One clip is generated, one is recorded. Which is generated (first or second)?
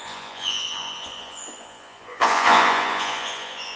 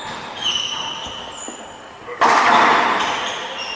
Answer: first